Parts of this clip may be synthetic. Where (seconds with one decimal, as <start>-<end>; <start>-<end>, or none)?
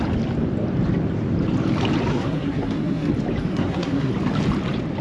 2.1-3.1; 3.5-4.1